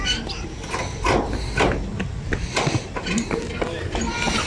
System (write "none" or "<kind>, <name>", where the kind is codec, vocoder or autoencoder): none